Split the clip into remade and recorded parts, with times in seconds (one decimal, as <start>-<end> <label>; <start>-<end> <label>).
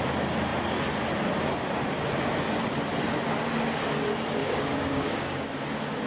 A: 0.0-4.4 recorded; 4.4-5.5 remade; 5.5-6.1 recorded